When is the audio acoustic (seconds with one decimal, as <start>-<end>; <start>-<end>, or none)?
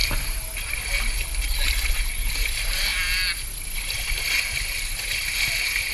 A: 0.0-5.9